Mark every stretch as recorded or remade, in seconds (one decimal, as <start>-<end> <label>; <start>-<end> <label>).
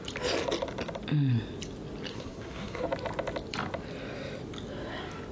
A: 0.0-2.1 recorded; 2.1-2.8 remade; 2.8-5.3 recorded